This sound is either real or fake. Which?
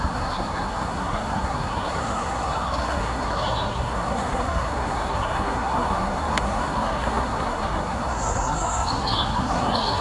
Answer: fake